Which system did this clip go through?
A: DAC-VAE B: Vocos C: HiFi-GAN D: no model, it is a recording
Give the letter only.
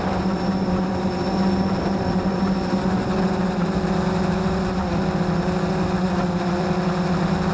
D